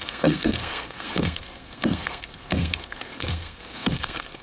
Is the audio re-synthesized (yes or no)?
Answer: yes